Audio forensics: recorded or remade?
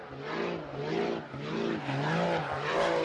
recorded